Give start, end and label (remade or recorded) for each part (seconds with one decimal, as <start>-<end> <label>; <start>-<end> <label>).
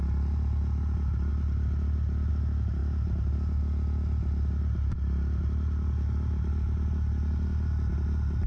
0.0-8.5 recorded